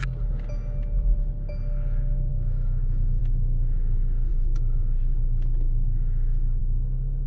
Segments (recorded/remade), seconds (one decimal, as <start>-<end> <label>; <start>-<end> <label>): 0.0-2.3 recorded; 2.3-3.2 remade; 3.2-4.3 recorded; 4.3-6.6 remade; 6.6-7.3 recorded